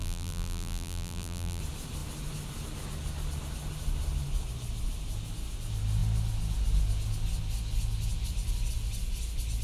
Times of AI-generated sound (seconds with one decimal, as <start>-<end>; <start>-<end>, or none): 0.0-1.6